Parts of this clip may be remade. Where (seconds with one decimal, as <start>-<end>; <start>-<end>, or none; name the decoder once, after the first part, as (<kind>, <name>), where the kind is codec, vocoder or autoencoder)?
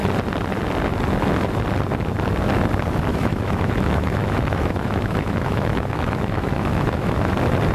3.1-7.3 (autoencoder, DAC-VAE)